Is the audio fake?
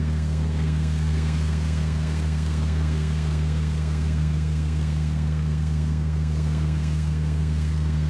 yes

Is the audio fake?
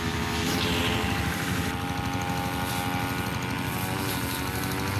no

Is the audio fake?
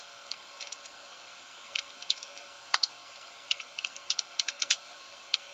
yes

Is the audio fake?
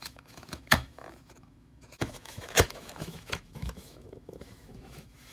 yes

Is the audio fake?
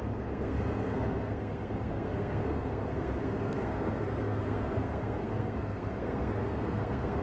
yes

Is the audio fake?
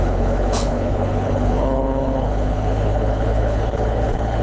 yes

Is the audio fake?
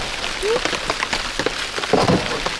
no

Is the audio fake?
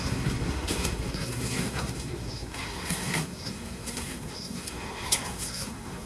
yes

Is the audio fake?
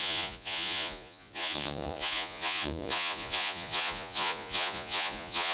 yes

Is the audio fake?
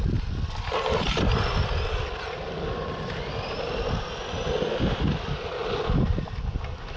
no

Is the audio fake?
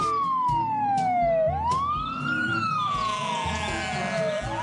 no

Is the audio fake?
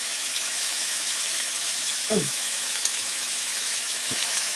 yes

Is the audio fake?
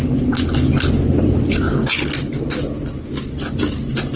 no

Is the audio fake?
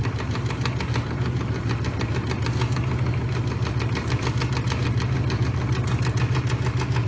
no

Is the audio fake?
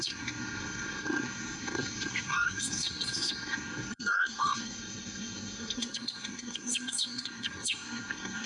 yes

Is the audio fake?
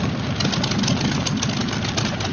no